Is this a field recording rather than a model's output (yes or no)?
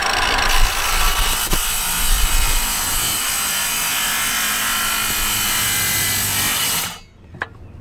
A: yes